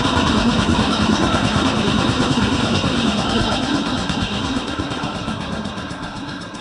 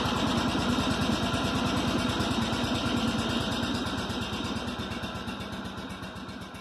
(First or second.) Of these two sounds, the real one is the second